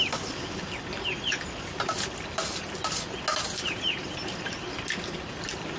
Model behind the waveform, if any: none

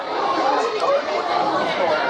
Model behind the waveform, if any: vocoder, BigVGAN v2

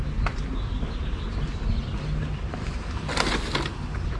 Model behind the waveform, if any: vocoder, BigVGAN v2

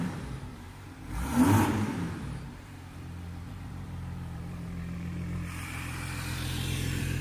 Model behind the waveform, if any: vocoder, BigVGAN v2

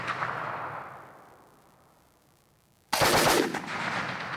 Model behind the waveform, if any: none